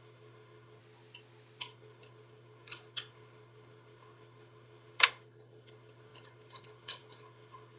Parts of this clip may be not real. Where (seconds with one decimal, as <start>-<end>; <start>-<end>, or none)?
0.0-0.8; 1.6-7.8